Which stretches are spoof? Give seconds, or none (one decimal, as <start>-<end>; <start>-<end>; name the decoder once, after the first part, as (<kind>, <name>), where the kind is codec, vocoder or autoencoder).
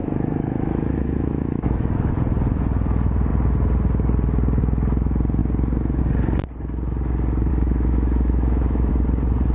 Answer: 0.0-2.1 (autoencoder, DAC-VAE); 7.5-8.9